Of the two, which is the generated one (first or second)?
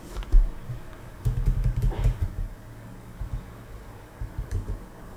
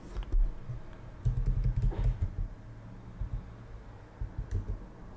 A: first